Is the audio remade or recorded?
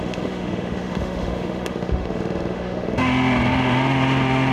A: remade